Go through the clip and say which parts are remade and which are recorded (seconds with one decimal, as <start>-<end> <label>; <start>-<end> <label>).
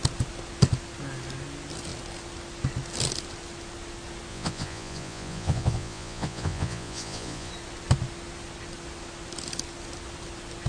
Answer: 0.0-4.3 recorded; 4.3-7.5 remade; 7.5-10.7 recorded